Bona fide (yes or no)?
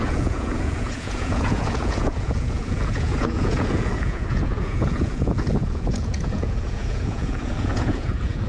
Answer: no